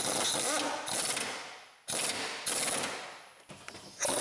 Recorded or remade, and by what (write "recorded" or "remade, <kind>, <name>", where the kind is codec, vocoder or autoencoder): recorded